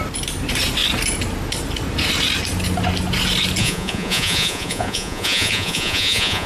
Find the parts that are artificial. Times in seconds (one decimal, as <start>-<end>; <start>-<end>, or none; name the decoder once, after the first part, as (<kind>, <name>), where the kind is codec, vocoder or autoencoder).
3.6-6.5 (vocoder, Vocos)